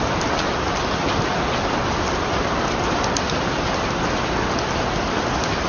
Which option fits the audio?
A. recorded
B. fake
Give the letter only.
A